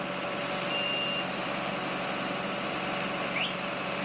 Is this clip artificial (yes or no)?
no